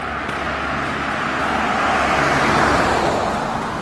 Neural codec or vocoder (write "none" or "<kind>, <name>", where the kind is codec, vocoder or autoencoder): none